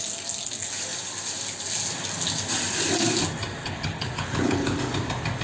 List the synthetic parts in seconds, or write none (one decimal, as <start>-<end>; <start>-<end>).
3.6-4.8